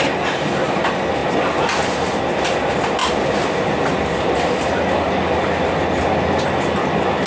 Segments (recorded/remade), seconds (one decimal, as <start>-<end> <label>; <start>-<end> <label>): 0.0-3.0 recorded; 3.0-4.5 remade; 4.5-7.3 recorded

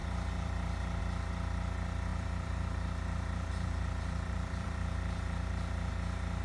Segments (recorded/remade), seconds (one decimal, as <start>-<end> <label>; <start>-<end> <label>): 0.0-1.0 remade; 1.0-2.1 recorded; 2.1-5.9 remade; 5.9-6.4 recorded

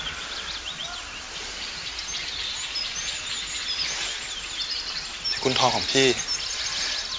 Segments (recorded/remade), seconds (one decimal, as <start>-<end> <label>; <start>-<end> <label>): 0.0-7.2 recorded

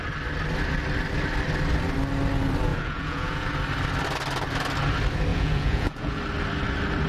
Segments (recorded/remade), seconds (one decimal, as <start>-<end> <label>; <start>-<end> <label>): 0.0-2.7 recorded; 2.7-3.5 remade; 3.5-5.3 recorded; 5.3-6.2 remade; 6.2-7.1 recorded

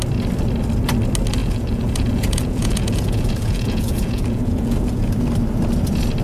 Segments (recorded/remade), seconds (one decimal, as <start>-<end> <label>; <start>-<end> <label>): 0.0-1.4 recorded; 1.4-5.1 remade; 5.1-6.2 recorded

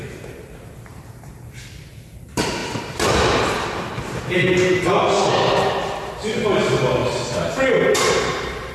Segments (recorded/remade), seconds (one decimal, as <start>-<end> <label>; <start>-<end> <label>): 0.0-2.6 remade; 2.6-6.1 recorded; 6.1-7.0 remade; 7.0-7.5 recorded; 7.5-8.7 remade

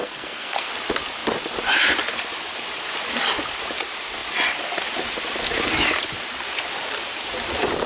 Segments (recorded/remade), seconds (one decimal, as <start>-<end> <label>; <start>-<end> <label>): 0.0-0.7 remade; 0.7-7.9 recorded

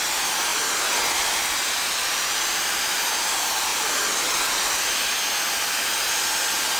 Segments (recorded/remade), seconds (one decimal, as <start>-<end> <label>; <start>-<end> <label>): 0.0-2.0 recorded; 2.0-3.0 remade; 3.0-6.8 recorded